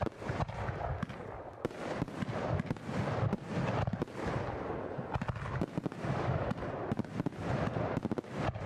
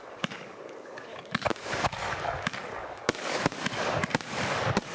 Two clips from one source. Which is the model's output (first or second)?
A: second